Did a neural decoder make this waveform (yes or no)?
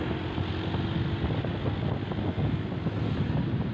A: no